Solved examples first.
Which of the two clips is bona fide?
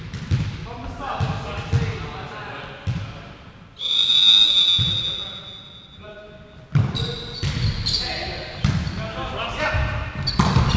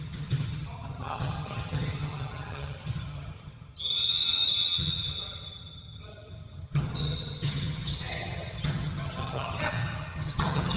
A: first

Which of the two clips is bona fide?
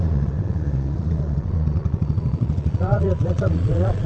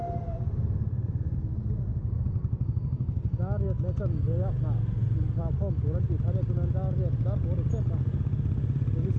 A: second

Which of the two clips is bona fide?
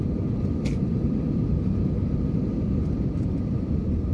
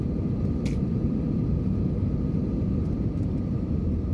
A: second